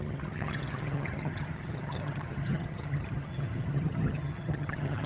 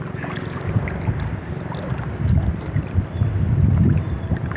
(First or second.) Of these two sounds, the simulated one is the first